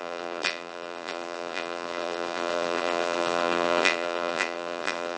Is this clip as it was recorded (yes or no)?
no